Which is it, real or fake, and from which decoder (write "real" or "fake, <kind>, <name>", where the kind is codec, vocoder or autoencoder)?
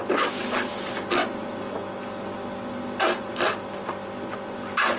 real